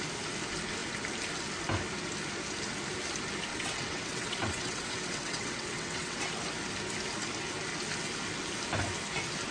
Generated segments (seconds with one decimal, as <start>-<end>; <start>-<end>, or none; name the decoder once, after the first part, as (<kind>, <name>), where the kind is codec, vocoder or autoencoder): 3.5-6.2 (vocoder, WaveNeXt)

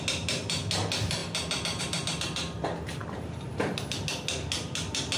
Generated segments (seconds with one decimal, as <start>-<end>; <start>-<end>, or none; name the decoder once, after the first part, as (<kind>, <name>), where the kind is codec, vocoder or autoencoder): 3.0-3.7 (vocoder, BigVGAN v2)

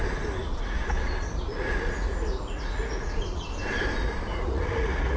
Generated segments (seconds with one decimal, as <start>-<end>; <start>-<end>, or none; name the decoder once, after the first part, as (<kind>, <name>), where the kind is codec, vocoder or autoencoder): 0.4-3.5 (vocoder, Vocos); 4.3-5.2

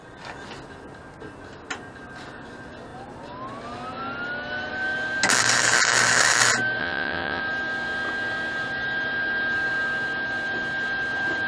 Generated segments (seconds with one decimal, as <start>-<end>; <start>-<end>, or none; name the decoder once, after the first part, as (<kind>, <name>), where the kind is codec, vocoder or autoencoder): 6.8-7.4 (vocoder, WaveNeXt)